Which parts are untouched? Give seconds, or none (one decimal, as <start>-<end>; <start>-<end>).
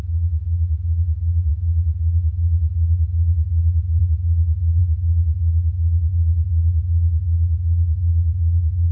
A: 0.0-8.9